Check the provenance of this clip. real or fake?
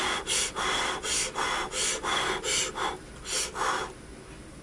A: real